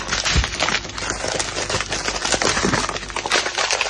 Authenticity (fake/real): real